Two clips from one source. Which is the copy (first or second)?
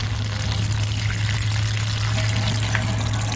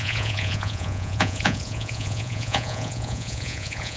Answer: second